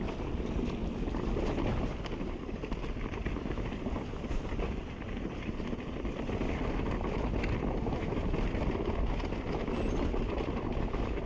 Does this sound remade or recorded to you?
recorded